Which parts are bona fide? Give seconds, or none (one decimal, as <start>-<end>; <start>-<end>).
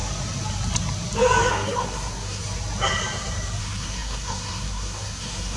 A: 0.0-1.5; 2.4-3.6